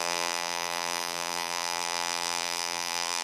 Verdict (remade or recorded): remade